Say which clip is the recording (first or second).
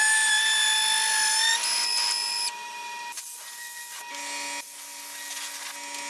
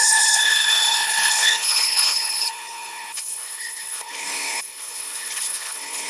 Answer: first